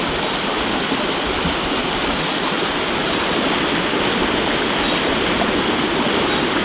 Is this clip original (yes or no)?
yes